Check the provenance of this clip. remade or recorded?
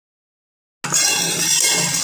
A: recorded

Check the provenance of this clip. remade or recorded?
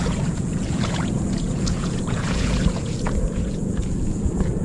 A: remade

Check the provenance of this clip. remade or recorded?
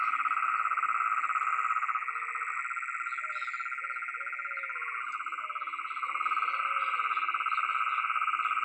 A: recorded